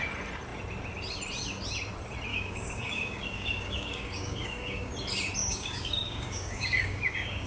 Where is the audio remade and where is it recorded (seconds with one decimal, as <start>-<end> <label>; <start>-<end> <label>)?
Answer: 0.0-2.3 recorded; 2.3-4.9 remade; 4.9-5.4 recorded; 5.4-7.5 remade